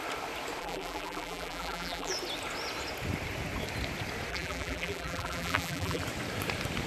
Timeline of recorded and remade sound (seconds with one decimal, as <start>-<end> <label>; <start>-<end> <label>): 0.0-0.6 recorded; 0.6-2.1 remade; 2.1-4.3 recorded; 4.3-6.0 remade; 6.0-6.9 recorded